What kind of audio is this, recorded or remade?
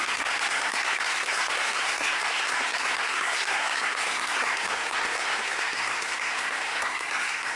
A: remade